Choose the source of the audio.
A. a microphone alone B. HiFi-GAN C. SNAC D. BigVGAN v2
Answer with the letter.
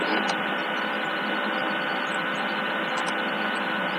A